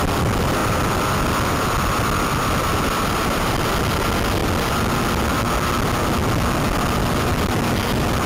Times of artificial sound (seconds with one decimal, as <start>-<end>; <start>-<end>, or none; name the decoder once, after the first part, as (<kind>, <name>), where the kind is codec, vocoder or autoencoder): 0.6-3.5 (vocoder, BigVGAN v2)

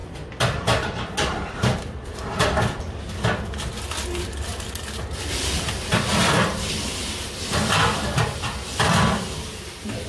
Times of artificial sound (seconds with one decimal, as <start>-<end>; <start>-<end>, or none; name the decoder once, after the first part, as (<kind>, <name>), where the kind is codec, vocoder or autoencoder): 0.0-3.0 (vocoder, BigVGAN v2)

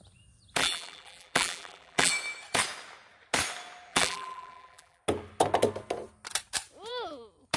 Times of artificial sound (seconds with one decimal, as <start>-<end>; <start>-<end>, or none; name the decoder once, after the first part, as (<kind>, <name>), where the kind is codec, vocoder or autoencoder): 0.6-2.1 (vocoder, BigVGAN v2); 3.9-5.0

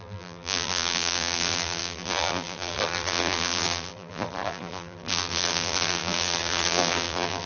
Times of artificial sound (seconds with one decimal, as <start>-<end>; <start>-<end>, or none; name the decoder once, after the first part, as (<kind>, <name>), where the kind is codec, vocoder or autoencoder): 0.0-7.5 (vocoder, BigVGAN v2)